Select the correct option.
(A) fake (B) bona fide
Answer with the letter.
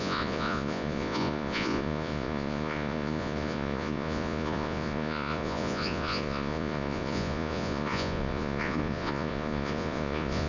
A